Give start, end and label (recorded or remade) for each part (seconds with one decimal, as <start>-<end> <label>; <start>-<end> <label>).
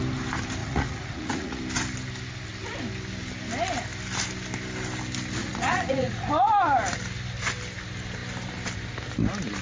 0.0-0.6 recorded; 0.6-1.6 remade; 1.6-5.4 recorded; 5.4-6.3 remade; 6.3-9.6 recorded